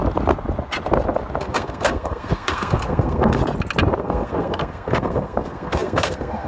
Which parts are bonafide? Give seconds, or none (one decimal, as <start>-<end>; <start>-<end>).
0.0-1.4; 3.4-4.0